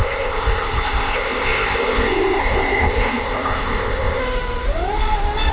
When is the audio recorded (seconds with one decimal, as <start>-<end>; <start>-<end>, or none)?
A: 4.2-5.5